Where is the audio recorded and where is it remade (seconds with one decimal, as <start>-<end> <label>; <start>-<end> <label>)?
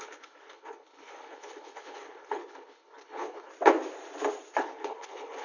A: 0.0-3.5 remade; 3.5-4.6 recorded; 4.6-5.4 remade